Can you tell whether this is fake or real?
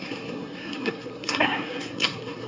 fake